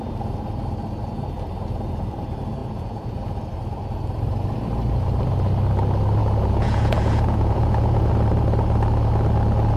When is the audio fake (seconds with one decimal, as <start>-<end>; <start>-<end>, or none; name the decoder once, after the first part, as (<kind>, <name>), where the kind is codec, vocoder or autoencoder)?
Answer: 2.6-3.4 (vocoder, Vocos); 6.2-8.1